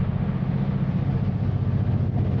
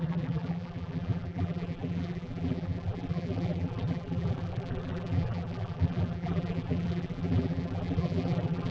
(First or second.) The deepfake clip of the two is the second